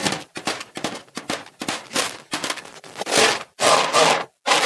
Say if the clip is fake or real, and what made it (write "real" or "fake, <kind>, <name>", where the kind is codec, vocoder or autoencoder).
real